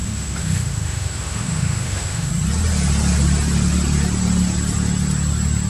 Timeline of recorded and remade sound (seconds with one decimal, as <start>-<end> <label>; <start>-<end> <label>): 0.0-2.3 remade; 2.3-5.7 recorded

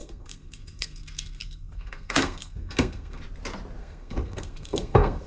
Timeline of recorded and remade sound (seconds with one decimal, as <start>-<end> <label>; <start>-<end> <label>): 0.0-3.2 remade; 3.2-3.8 recorded; 3.8-5.3 remade

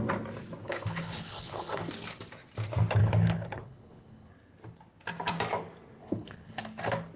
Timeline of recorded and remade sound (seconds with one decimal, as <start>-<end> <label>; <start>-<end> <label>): 0.0-0.6 recorded; 0.6-1.8 remade; 1.8-3.0 recorded; 3.0-4.3 remade; 4.3-6.0 recorded; 6.0-6.6 remade; 6.6-7.2 recorded